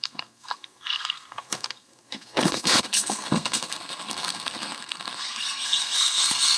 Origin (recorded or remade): remade